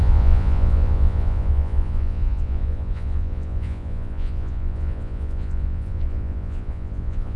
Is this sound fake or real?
fake